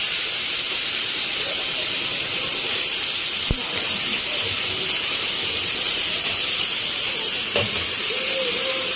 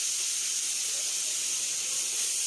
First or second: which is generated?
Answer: first